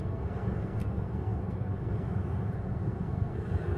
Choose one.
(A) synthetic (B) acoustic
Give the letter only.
A